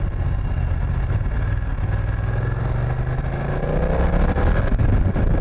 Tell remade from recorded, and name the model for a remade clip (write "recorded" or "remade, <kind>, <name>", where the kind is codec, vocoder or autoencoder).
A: recorded